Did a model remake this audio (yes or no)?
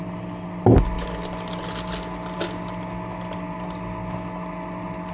no